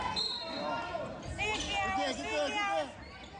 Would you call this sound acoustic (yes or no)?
yes